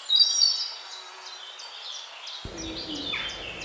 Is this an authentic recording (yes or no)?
yes